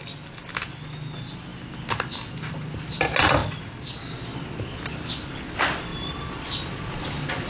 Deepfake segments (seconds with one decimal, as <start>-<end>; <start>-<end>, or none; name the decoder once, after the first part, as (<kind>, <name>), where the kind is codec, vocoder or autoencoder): none